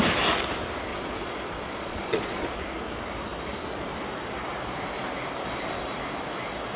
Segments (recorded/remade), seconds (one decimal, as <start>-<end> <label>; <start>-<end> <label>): 0.0-0.9 recorded; 0.9-2.6 remade; 2.6-6.8 recorded